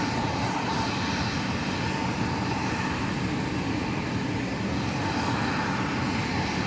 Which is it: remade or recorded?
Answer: recorded